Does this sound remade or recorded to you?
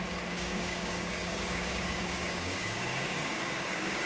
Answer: remade